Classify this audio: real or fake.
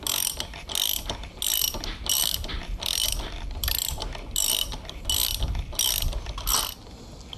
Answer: real